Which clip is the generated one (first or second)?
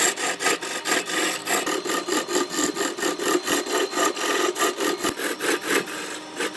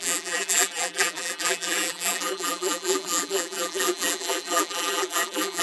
second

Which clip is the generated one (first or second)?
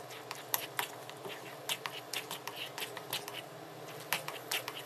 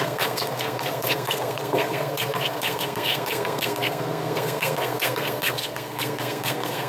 second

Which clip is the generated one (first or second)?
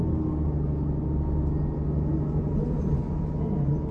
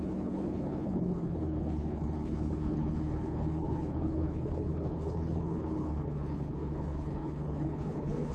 second